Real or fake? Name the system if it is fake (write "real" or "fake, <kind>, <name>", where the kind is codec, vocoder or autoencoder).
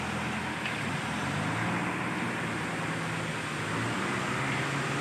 real